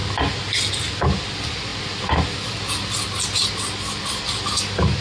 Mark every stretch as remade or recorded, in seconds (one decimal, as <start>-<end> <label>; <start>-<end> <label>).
0.0-5.0 recorded

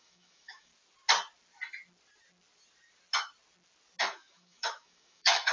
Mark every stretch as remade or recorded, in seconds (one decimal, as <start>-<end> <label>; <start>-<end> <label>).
0.0-0.7 remade; 0.7-4.0 recorded; 4.0-5.5 remade

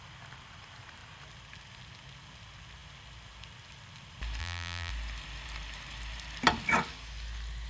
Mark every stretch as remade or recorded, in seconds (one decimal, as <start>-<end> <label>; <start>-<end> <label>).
0.0-4.4 recorded; 4.4-4.9 remade; 4.9-7.7 recorded

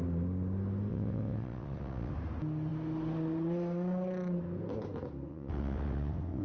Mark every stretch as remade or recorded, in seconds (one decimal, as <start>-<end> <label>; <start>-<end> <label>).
0.0-0.9 recorded; 0.9-2.1 remade; 2.1-5.3 recorded; 5.3-6.4 remade